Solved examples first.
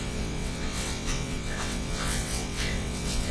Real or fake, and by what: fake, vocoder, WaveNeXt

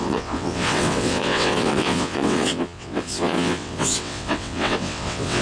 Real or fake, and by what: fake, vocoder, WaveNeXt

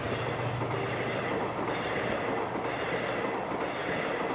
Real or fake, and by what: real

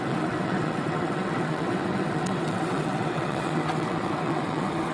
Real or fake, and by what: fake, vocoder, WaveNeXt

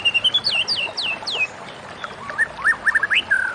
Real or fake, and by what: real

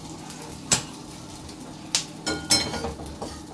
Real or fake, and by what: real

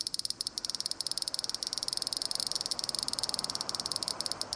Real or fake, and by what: real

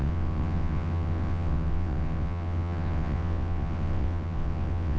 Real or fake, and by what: fake, vocoder, WaveNeXt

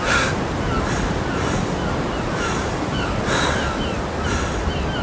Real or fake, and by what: real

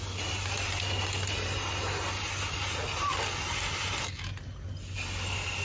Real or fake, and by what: real